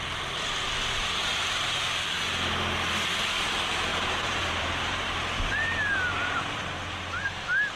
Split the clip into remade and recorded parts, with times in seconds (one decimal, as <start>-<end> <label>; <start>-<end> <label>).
0.0-1.3 recorded; 1.3-2.3 remade; 2.3-3.9 recorded; 3.9-6.6 remade; 6.6-7.8 recorded